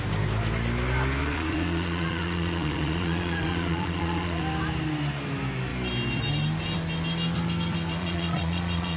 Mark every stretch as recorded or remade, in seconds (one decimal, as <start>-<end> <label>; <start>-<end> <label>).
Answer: 0.0-1.2 recorded; 1.2-4.4 remade; 4.4-8.0 recorded; 8.0-9.0 remade